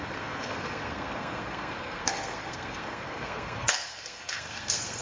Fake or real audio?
fake